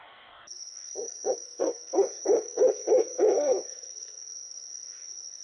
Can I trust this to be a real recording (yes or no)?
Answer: no